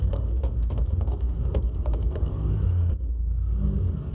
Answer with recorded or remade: remade